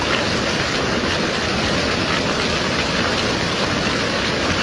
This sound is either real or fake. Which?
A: real